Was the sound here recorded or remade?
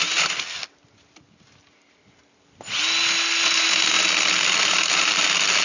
recorded